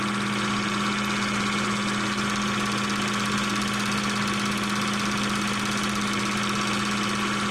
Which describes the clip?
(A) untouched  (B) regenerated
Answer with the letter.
A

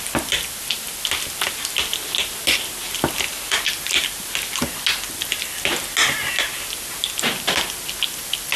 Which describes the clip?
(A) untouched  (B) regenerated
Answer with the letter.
A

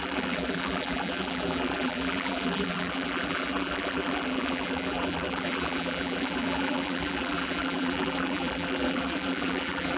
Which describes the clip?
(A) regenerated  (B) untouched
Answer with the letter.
A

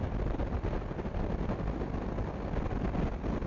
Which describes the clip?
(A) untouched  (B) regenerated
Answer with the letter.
A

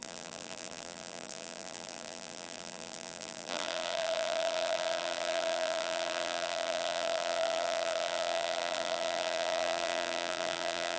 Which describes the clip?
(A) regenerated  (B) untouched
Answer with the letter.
A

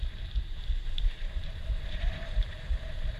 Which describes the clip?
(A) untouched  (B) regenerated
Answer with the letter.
B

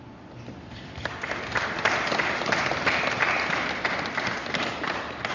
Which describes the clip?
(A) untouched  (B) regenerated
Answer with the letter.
A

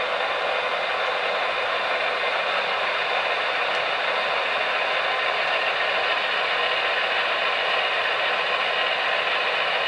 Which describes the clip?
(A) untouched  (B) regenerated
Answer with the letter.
A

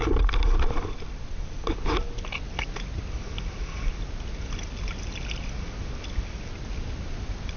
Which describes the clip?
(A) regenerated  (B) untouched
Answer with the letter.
B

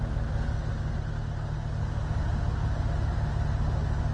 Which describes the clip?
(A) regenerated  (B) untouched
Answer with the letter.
B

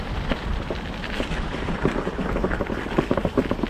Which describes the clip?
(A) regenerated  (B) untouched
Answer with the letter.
B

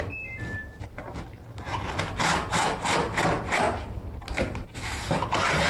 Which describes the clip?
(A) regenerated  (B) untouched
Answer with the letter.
B